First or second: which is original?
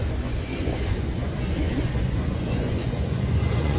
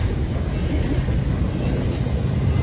second